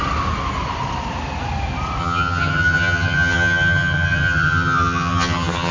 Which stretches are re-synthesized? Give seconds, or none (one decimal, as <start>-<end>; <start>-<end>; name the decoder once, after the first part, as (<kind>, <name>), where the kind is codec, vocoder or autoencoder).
2.0-5.7 (vocoder, HiFi-GAN)